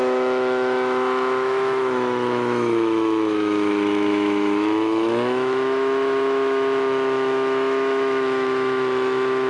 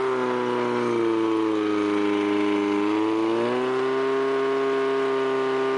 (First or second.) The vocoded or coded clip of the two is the first